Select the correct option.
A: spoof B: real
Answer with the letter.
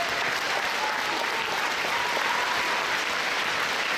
B